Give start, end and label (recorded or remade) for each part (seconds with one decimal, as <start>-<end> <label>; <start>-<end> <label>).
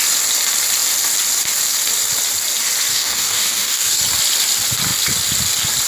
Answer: 0.0-2.9 recorded; 2.9-4.0 remade; 4.0-5.9 recorded